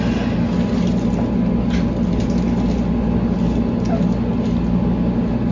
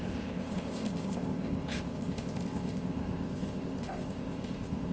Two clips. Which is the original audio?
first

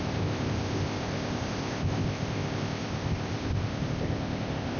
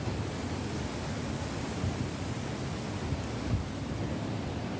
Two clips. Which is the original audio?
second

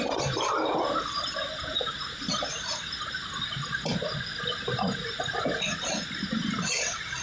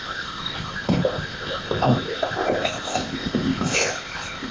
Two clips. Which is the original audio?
first